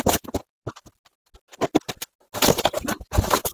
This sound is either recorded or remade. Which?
recorded